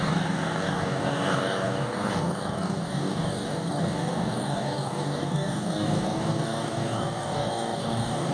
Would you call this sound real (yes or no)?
no